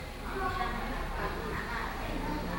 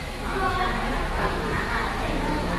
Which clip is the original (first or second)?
first